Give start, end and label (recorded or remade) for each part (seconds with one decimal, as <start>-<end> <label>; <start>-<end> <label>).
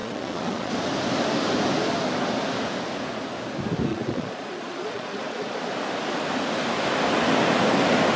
0.0-0.7 remade; 0.7-3.9 recorded; 3.9-5.6 remade; 5.6-8.2 recorded